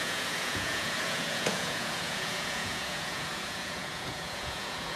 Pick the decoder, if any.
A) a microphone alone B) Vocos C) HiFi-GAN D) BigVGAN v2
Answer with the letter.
B